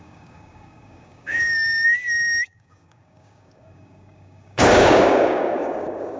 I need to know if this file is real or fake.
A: fake